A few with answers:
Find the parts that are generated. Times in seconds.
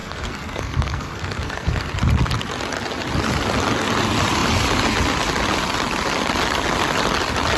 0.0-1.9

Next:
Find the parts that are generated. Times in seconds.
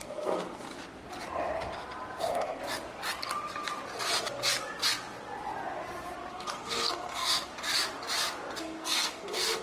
0.0-0.7; 2.2-2.6; 6.3-7.5; 8.6-9.6